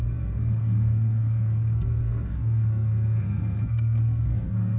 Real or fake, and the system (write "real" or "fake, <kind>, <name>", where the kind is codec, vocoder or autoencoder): fake, codec, SNAC